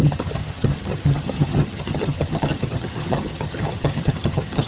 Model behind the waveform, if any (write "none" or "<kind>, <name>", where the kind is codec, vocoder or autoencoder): vocoder, HiFi-GAN